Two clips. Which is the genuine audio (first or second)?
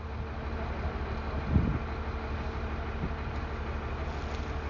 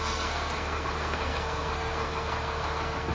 first